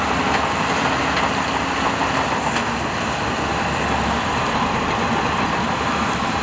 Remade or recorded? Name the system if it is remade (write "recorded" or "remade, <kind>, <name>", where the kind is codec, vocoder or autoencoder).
recorded